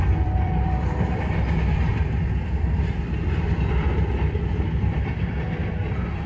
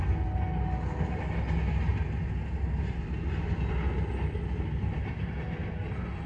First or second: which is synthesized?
first